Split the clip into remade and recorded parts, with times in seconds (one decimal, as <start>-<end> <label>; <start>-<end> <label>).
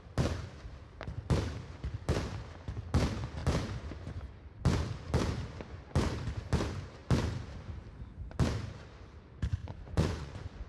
0.0-9.6 recorded; 9.6-10.7 remade